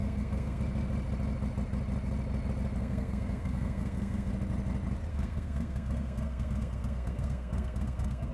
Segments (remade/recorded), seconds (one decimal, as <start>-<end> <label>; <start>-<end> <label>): 0.0-0.6 remade; 0.6-2.8 recorded; 2.8-4.3 remade; 4.3-5.1 recorded; 5.1-8.3 remade